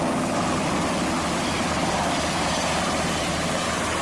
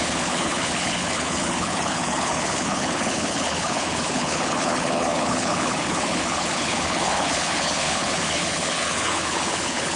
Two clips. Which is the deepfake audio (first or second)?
second